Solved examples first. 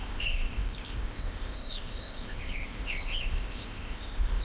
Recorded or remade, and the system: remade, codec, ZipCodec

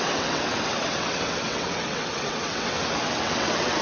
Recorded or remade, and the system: remade, vocoder, WaveNeXt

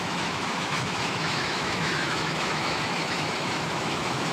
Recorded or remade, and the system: remade, autoencoder, DAC-VAE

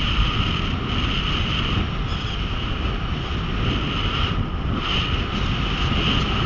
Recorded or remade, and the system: recorded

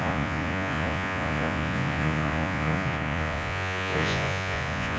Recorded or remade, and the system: remade, vocoder, Vocos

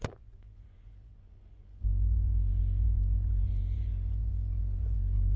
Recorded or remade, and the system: remade, vocoder, Vocos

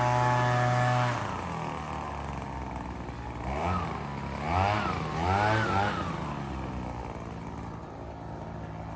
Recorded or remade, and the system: recorded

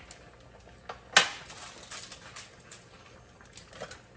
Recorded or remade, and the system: recorded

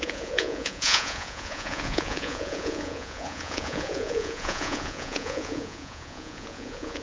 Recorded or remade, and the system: remade, vocoder, Vocos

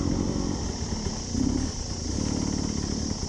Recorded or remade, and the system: recorded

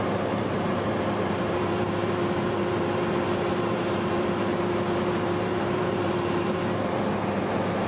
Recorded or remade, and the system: remade, vocoder, BigVGAN v2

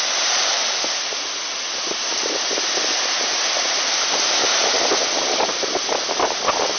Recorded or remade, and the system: recorded